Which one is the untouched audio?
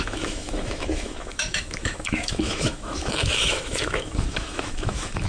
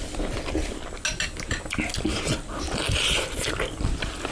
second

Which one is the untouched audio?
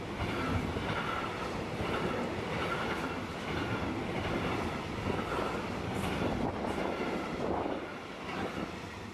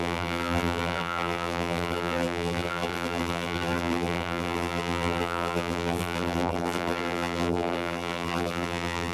first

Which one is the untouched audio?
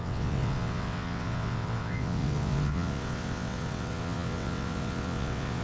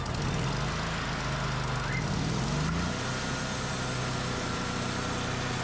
second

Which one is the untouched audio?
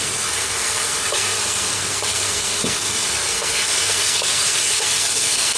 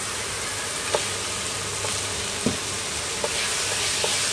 second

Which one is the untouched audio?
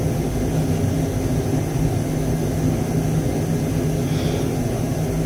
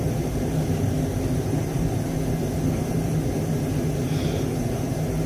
first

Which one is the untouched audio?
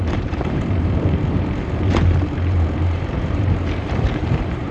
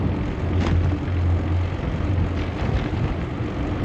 second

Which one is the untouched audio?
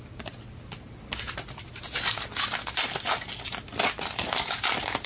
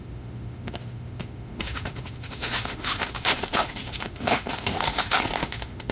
first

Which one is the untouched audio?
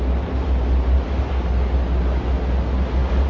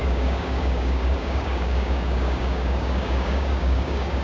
first